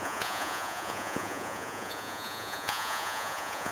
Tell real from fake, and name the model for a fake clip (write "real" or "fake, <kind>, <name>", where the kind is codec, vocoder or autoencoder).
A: fake, vocoder, Vocos